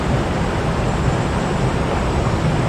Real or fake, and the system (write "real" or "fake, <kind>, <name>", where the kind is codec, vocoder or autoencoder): real